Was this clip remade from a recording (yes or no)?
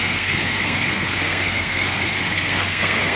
yes